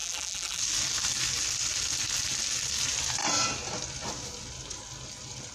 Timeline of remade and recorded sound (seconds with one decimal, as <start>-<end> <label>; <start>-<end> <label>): 0.0-0.6 remade; 0.6-5.5 recorded